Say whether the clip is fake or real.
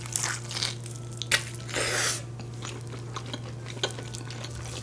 real